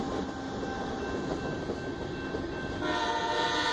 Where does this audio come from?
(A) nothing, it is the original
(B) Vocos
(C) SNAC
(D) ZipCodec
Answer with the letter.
A